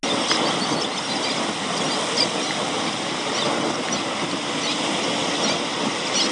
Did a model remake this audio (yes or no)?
no